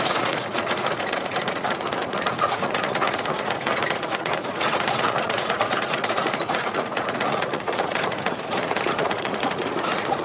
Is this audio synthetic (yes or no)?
yes